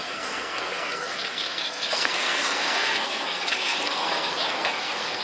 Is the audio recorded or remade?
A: remade